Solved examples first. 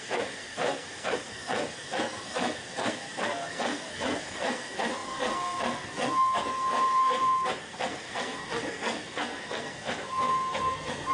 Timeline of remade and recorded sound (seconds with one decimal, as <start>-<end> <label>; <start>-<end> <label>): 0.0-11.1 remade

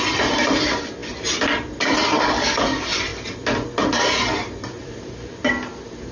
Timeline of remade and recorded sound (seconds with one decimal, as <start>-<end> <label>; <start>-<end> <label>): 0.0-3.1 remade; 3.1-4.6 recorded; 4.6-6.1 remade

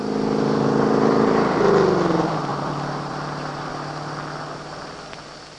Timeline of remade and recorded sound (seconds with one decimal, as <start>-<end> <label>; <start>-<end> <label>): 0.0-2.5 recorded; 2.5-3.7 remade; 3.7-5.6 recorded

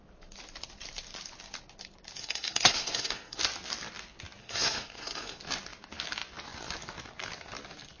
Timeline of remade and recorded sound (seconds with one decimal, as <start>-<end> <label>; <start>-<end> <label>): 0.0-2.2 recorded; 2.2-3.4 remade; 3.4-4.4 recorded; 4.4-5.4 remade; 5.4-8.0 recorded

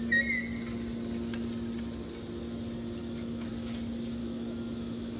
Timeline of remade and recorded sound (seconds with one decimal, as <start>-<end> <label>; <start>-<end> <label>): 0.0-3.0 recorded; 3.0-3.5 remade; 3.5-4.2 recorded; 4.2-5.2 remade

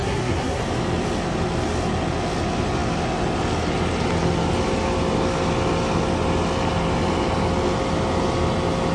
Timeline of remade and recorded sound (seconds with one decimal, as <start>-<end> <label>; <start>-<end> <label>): 0.0-0.6 remade; 0.6-8.9 recorded

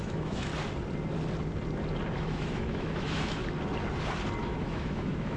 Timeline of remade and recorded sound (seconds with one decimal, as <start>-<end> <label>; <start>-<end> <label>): 0.0-0.5 remade; 0.5-2.2 recorded; 2.2-3.4 remade; 3.4-4.4 recorded; 4.4-5.4 remade